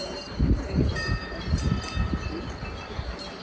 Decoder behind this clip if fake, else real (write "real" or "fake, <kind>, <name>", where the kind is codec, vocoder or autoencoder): fake, vocoder, BigVGAN v2